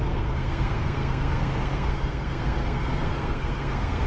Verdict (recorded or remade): remade